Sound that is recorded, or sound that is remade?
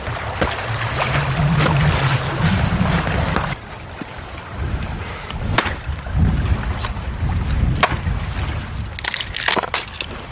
recorded